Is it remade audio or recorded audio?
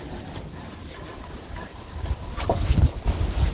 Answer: remade